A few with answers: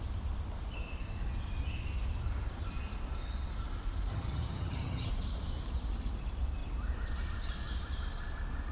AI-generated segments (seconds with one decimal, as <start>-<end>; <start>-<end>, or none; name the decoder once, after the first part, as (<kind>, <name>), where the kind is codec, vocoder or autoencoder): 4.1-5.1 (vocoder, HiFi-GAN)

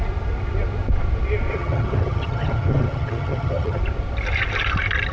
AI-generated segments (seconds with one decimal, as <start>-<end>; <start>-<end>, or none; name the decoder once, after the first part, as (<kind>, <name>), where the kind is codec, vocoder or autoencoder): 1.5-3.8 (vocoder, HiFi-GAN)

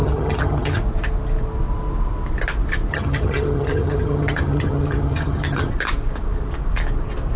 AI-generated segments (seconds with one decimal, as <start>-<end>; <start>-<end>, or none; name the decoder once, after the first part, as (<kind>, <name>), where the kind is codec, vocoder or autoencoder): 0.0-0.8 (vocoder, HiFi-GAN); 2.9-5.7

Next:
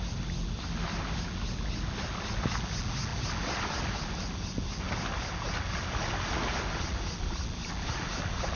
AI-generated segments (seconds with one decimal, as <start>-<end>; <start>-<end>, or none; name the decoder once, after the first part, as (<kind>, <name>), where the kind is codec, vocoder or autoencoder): none

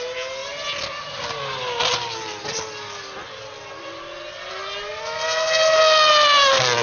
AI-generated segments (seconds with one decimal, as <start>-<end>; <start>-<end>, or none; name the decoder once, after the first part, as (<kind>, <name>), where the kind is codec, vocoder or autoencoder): none

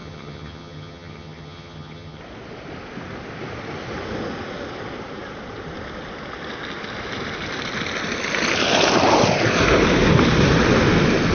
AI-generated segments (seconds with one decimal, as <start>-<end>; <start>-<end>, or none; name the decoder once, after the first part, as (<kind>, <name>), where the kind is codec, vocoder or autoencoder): 0.0-2.2 (vocoder, HiFi-GAN)